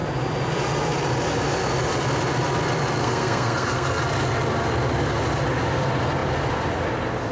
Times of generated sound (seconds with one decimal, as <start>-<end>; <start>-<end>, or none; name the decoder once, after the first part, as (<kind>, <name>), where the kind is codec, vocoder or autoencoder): 3.0-4.0 (codec, SNAC)